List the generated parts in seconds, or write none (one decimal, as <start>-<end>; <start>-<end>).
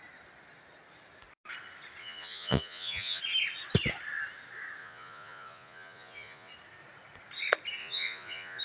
2.0-3.2; 4.8-6.5; 7.8-8.6